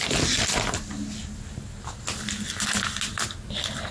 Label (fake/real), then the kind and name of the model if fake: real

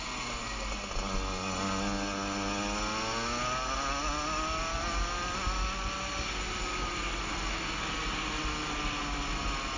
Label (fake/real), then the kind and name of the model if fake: real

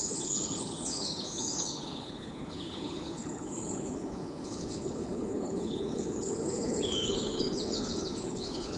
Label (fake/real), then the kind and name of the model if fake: fake, codec, HILCodec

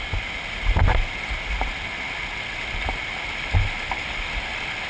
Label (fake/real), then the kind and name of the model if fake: real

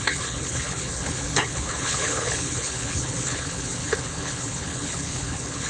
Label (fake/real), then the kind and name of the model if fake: fake, codec, HILCodec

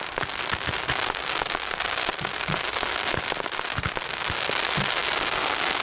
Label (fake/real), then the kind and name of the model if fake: real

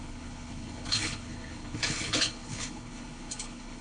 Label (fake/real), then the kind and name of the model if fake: fake, codec, HILCodec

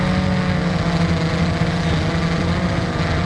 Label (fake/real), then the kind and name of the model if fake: real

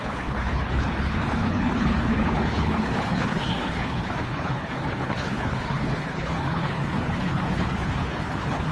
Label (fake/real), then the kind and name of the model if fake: fake, codec, HILCodec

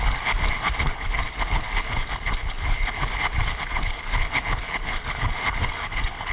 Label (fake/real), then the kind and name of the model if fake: fake, codec, HILCodec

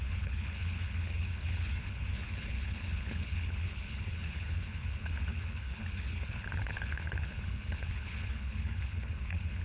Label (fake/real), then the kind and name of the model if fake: fake, codec, HILCodec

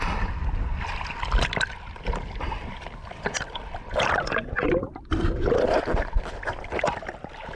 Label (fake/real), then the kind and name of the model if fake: real